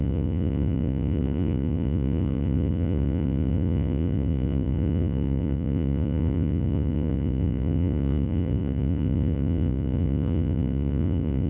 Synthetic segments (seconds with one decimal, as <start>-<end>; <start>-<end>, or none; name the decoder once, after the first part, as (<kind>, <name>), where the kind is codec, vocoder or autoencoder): 0.0-11.5 (vocoder, Vocos)